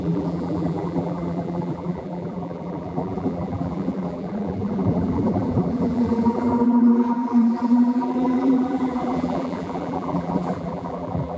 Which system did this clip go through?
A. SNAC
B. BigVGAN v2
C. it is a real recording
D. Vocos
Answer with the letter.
B